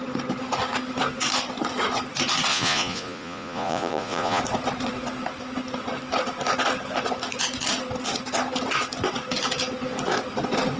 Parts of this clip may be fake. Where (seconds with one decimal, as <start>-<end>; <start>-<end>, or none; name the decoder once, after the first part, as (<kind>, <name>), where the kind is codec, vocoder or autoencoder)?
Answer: 2.5-4.4 (vocoder, Vocos)